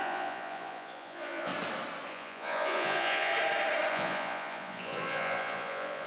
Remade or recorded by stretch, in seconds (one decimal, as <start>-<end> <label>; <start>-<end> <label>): 0.0-1.5 remade; 1.5-2.1 recorded; 2.1-3.3 remade; 3.3-3.9 recorded; 3.9-6.1 remade